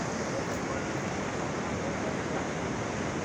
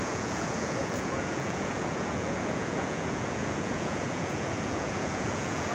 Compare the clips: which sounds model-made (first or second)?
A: second